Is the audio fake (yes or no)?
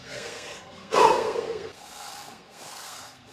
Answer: yes